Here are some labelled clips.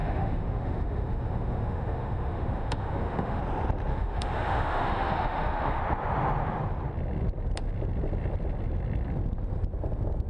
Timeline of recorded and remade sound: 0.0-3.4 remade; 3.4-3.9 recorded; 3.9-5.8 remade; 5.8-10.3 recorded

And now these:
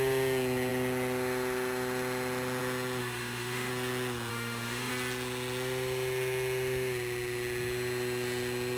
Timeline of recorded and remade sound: 0.0-3.0 recorded; 3.0-3.7 remade; 3.7-4.3 recorded; 4.3-4.9 remade; 4.9-8.8 recorded

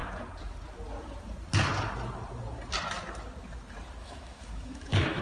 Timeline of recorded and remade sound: 0.0-4.0 recorded; 4.0-5.2 remade

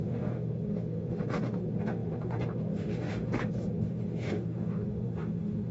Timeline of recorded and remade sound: 0.0-5.7 remade